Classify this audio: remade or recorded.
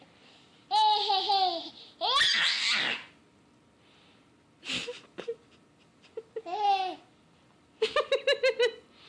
recorded